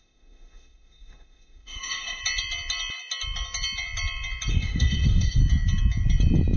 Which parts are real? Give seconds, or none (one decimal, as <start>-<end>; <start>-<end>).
2.2-4.5; 5.4-6.6